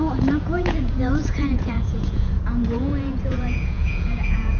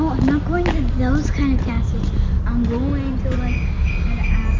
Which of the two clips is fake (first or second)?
first